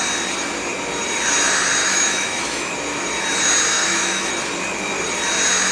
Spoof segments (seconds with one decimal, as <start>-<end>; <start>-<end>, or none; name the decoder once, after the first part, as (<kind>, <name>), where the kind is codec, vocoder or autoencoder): 1.8-2.7 (autoencoder, DAC-VAE); 3.8-4.3